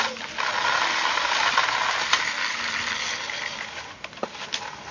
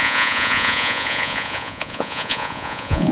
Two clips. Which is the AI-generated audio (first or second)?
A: second